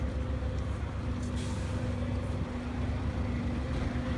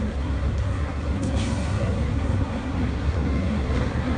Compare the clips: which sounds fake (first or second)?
second